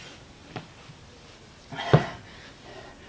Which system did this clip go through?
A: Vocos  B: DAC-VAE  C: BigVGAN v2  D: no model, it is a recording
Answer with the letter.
D